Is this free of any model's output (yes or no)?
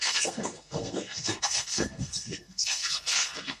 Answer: no